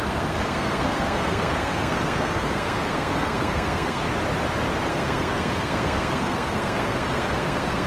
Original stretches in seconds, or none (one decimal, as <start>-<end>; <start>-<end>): 4.0-4.9

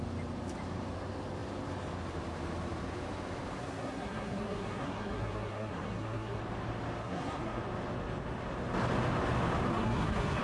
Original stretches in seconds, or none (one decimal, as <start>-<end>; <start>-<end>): 0.0-3.6; 6.4-7.0; 7.6-9.7

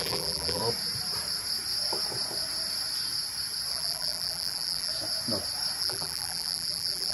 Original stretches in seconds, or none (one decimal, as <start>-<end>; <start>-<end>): 0.6-3.7; 4.9-5.8

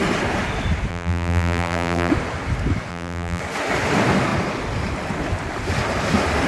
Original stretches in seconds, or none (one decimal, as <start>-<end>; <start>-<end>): 0.0-0.9; 2.1-2.9; 3.4-6.5

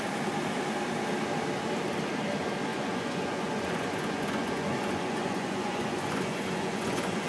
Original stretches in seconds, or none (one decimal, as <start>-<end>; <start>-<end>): 0.0-2.7